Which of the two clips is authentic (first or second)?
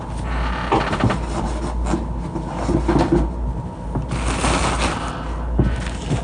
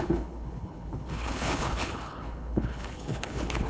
first